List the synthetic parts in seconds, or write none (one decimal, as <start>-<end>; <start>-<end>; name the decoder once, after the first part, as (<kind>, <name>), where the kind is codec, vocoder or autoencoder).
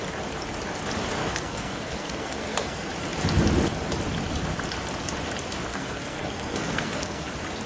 1.2-2.9 (codec, SNAC); 5.7-7.3